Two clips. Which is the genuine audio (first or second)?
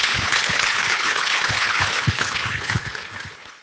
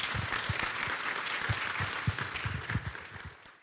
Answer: second